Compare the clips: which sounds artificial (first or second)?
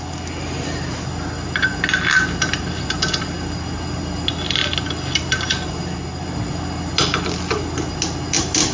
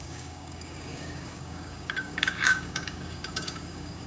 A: second